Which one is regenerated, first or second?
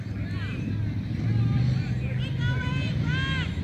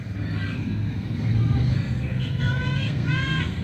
second